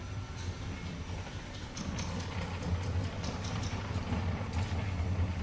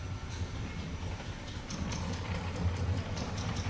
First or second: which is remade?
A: second